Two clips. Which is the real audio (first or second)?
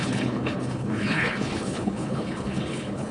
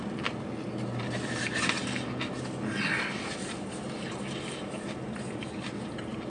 second